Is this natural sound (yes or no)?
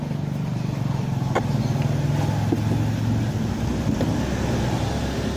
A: yes